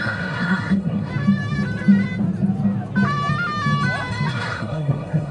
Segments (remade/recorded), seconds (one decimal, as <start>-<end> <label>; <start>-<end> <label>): 0.0-1.1 remade; 1.1-4.3 recorded; 4.3-5.3 remade